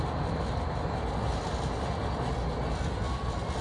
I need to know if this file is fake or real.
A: real